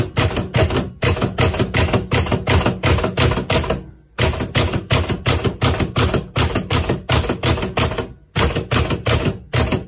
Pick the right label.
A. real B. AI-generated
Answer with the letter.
A